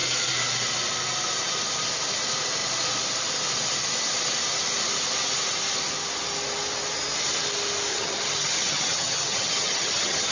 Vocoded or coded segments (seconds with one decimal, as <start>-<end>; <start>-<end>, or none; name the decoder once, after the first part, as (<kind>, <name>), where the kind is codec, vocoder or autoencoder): 7.9-10.3 (vocoder, HiFi-GAN)